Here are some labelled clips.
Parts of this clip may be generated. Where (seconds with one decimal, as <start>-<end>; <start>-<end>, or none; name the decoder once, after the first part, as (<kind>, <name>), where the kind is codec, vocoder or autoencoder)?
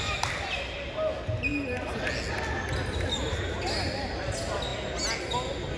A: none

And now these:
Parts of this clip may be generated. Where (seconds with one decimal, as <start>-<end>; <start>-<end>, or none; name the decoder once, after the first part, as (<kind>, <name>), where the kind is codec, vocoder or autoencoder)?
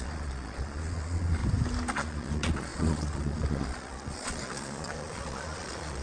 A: 0.0-1.4 (vocoder, Vocos); 1.9-6.0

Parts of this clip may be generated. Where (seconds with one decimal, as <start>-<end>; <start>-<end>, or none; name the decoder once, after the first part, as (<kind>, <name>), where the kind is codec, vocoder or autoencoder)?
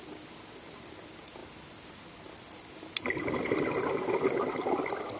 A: none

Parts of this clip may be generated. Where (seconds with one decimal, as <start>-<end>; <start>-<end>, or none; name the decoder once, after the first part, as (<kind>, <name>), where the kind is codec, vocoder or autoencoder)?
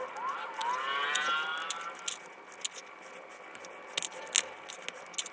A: none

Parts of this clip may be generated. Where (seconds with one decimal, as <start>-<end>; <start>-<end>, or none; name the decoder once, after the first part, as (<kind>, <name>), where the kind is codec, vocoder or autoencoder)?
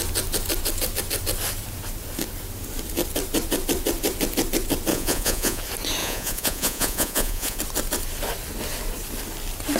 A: 4.9-5.6 (vocoder, Vocos); 6.0-7.6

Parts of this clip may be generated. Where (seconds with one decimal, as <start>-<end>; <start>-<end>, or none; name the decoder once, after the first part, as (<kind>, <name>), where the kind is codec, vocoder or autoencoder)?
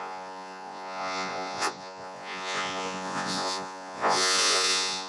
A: 0.0-5.1 (vocoder, Vocos)